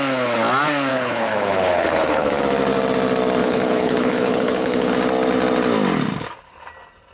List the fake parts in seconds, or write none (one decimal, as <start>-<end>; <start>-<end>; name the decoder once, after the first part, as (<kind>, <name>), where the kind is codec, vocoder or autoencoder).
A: 0.9-2.4 (codec, HILCodec); 3.4-4.9